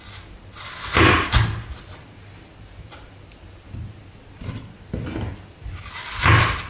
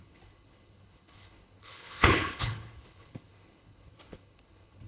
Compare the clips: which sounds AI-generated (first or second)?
second